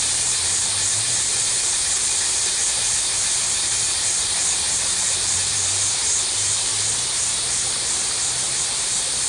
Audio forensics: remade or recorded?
remade